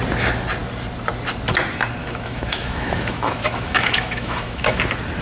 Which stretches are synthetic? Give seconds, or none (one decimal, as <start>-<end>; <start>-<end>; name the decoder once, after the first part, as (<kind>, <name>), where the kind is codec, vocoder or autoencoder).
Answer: 2.0-4.8 (autoencoder, DAC-VAE)